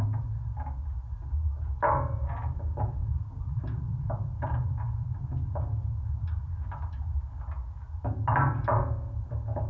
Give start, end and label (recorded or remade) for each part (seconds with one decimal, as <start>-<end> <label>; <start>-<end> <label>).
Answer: 0.0-9.7 recorded